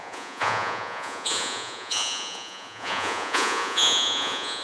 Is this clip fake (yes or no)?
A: yes